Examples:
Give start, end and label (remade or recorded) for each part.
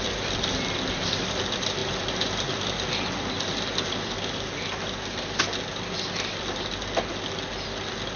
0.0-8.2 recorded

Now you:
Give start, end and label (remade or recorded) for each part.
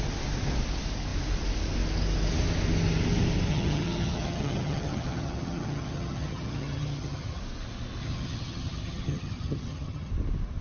0.0-3.5 recorded; 3.5-7.4 remade; 7.4-8.0 recorded; 8.0-10.1 remade; 10.1-10.6 recorded